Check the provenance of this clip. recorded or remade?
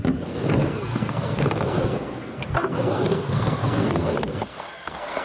remade